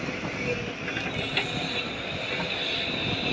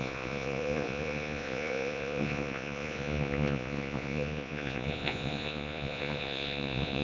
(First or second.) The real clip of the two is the first